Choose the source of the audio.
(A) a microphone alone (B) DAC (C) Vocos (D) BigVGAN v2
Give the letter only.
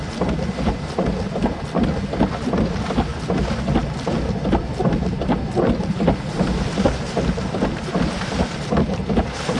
A